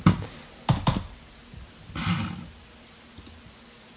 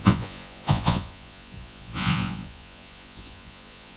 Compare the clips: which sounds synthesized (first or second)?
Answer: second